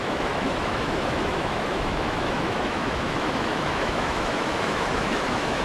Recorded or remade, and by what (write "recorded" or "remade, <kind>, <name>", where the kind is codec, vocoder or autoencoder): remade, autoencoder, DAC-VAE